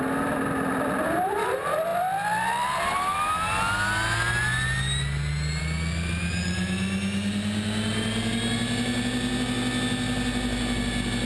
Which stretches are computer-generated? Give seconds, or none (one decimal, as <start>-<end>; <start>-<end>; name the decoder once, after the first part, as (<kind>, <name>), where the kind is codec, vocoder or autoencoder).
none